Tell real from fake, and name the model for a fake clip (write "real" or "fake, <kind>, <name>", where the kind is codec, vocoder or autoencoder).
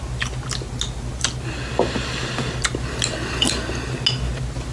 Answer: real